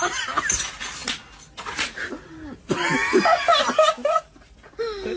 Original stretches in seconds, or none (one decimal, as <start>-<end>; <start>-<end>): 0.0-5.2